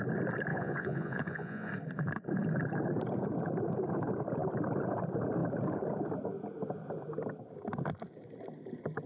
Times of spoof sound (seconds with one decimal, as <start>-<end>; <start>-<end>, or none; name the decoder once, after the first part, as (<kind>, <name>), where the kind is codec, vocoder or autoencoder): 0.5-1.7 (vocoder, Vocos)